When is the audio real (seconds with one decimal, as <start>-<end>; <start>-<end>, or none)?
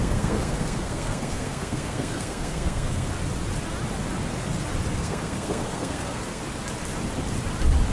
3.1-4.9; 6.4-7.9